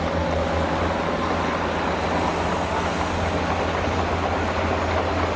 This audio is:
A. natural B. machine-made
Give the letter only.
A